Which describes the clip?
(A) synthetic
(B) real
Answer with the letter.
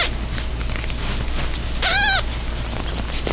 B